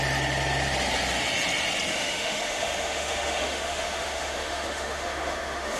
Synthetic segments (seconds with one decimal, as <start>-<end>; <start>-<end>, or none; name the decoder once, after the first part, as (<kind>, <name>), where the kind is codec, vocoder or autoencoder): 1.9-5.8 (autoencoder, DAC-VAE)